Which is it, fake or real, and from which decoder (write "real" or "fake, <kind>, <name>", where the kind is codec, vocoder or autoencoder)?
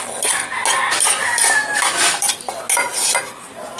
real